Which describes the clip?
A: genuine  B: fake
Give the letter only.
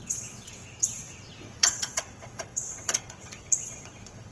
B